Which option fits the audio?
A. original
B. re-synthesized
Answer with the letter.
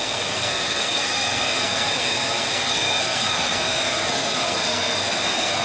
B